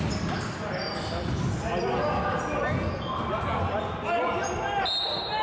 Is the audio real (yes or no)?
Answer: yes